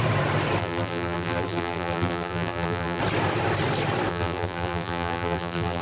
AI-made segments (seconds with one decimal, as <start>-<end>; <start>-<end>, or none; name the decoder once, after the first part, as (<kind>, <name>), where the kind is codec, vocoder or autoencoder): 0.6-3.0 (vocoder, BigVGAN v2); 4.1-5.8